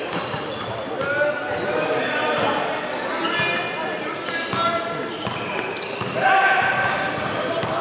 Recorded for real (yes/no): yes